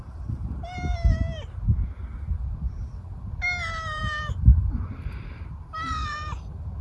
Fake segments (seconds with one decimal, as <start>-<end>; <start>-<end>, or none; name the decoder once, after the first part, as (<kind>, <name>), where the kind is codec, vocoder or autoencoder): 0.0-1.7 (vocoder, BigVGAN v2); 2.3-6.8